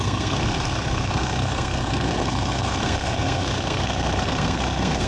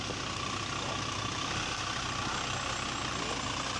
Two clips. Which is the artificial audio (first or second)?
first